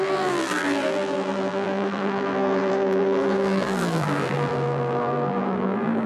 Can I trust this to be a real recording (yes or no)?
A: no